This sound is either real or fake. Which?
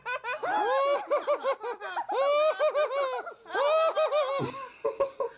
real